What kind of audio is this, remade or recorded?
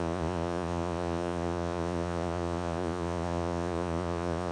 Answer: remade